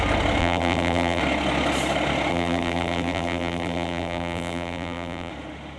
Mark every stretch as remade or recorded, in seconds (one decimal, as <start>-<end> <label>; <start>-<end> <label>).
0.0-0.4 recorded; 0.4-1.2 remade; 1.2-2.3 recorded; 2.3-5.3 remade; 5.3-5.8 recorded